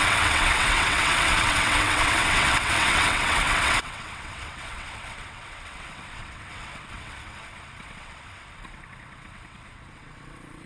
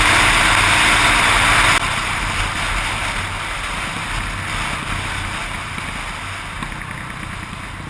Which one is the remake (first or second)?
first